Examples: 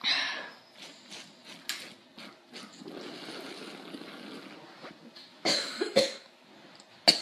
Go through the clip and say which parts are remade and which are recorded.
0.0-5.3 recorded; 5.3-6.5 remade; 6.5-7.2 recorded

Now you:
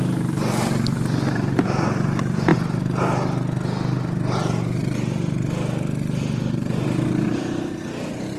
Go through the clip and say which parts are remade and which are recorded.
0.0-8.4 recorded

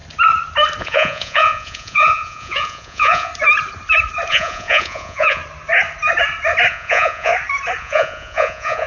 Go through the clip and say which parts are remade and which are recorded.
0.0-0.8 recorded; 0.8-3.3 remade; 3.3-4.3 recorded; 4.3-5.4 remade; 5.4-6.7 recorded; 6.7-7.3 remade; 7.3-7.8 recorded; 7.8-8.9 remade

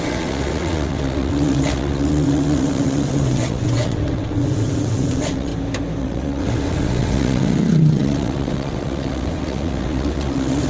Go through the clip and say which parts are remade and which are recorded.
0.0-5.5 remade; 5.5-6.0 recorded; 6.0-10.7 remade

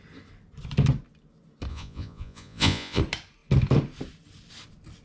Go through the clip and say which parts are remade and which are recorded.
0.0-1.7 recorded; 1.7-3.0 remade; 3.0-5.0 recorded

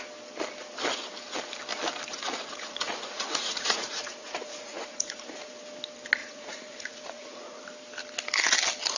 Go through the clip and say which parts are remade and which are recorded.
0.0-2.1 recorded; 2.1-5.5 remade; 5.5-6.2 recorded; 6.2-7.6 remade; 7.6-9.0 recorded

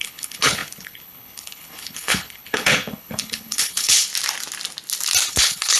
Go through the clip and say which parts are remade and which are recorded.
0.0-4.1 remade; 4.1-5.3 recorded; 5.3-5.8 remade

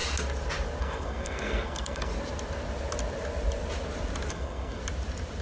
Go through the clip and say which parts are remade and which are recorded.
0.0-0.8 recorded; 0.8-2.1 remade; 2.1-4.3 recorded; 4.3-4.8 remade; 4.8-5.4 recorded